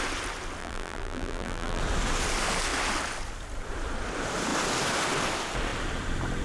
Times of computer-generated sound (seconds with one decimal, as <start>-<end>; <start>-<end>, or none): 0.6-1.8